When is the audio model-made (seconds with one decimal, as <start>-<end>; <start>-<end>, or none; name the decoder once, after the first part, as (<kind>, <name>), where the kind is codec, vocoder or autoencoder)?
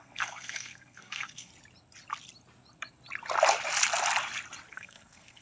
0.0-1.5 (codec, SNAC); 4.7-5.4